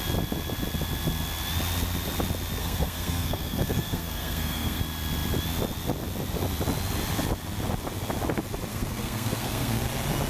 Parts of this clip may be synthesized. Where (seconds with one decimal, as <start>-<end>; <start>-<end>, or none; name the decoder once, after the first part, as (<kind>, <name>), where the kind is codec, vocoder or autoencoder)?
2.6-4.8 (codec, SNAC); 8.7-9.8